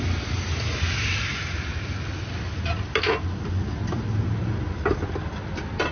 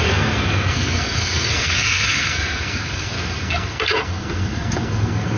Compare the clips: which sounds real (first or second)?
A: first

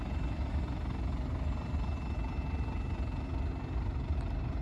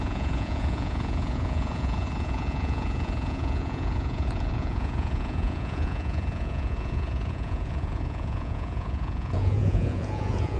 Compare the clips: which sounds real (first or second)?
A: first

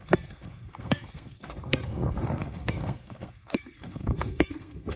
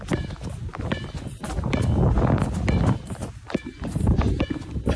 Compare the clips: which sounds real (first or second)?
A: second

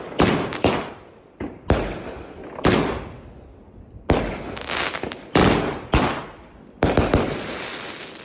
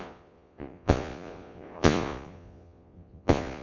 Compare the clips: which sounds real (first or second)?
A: first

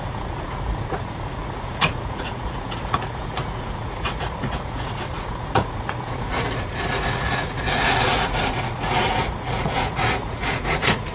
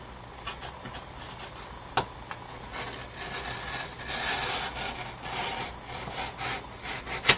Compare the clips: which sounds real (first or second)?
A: second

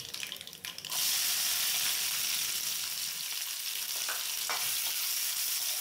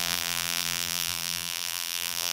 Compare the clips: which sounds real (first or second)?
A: first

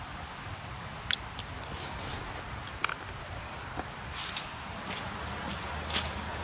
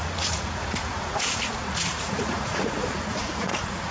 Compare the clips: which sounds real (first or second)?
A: first